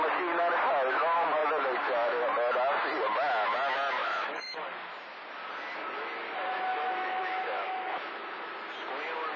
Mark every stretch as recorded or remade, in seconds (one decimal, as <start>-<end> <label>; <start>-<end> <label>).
0.0-4.0 recorded; 4.0-4.6 remade; 4.6-6.7 recorded; 6.7-8.1 remade; 8.1-9.4 recorded